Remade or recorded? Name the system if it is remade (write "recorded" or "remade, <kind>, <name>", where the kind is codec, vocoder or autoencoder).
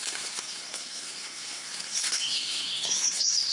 remade, codec, SNAC